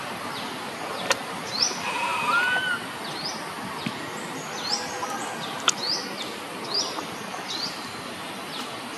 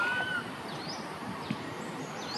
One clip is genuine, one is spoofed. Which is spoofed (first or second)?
second